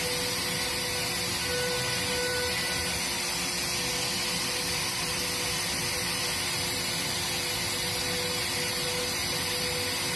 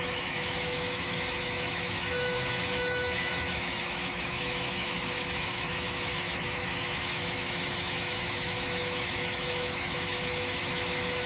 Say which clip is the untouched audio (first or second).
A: first